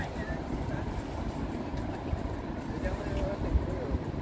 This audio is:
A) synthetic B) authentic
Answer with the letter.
B